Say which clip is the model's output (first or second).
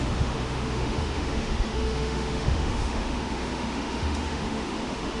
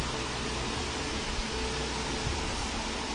first